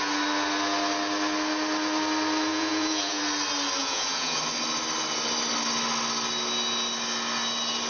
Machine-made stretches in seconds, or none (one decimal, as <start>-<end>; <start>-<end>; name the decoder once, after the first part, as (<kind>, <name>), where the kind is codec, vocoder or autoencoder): 2.5-3.2 (vocoder, Vocos); 3.8-4.4